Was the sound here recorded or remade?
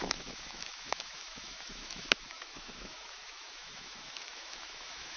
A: remade